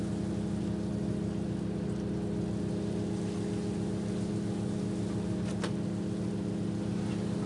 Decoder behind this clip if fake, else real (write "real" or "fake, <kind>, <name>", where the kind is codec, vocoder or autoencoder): real